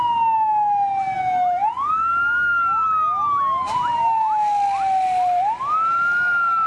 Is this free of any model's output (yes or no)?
yes